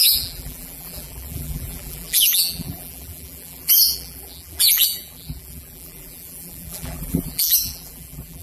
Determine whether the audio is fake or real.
fake